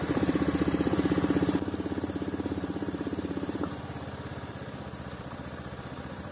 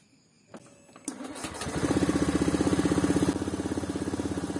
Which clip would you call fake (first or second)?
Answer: first